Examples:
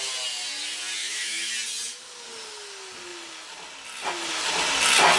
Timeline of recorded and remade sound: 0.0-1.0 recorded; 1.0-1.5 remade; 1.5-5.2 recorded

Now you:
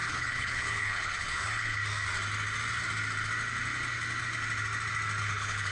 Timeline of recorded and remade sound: 0.0-1.8 remade; 1.8-5.2 recorded; 5.2-5.7 remade

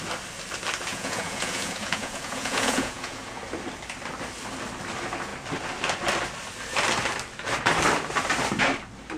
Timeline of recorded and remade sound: 0.0-0.9 recorded; 0.9-3.4 remade; 3.4-9.2 recorded

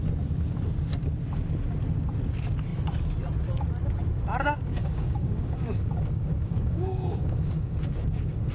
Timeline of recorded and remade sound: 0.0-4.7 recorded; 4.7-8.5 remade

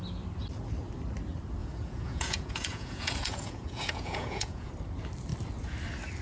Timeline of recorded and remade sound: 0.0-1.6 recorded; 1.6-4.7 remade; 4.7-6.2 recorded